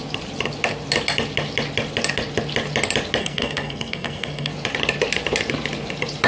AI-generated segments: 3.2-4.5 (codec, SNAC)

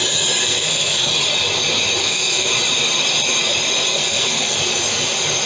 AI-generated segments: 0.4-1.1 (codec, SNAC); 2.0-2.5; 3.9-4.7

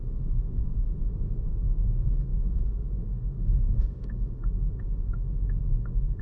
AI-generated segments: 0.0-6.2 (autoencoder, DAC-VAE)

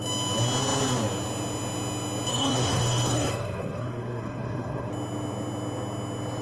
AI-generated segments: 2.3-4.9 (codec, SNAC)

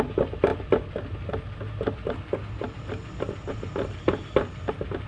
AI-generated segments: none

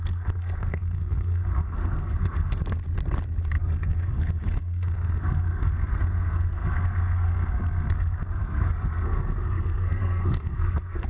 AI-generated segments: 0.0-2.6 (codec, SNAC); 3.6-11.1

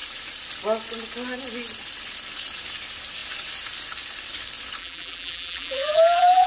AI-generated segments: 4.8-6.5 (vocoder, BigVGAN v2)

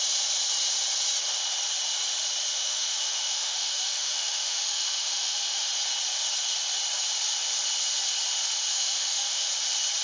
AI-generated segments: 2.5-5.7 (autoencoder, DAC-VAE); 8.7-9.5